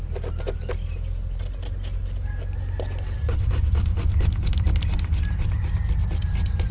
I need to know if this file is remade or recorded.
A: recorded